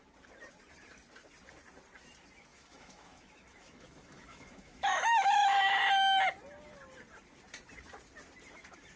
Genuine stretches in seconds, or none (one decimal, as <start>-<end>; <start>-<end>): 0.0-2.5; 5.8-9.0